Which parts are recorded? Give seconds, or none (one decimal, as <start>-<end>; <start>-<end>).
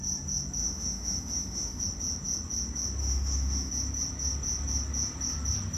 0.0-0.6; 1.8-3.0; 3.7-5.8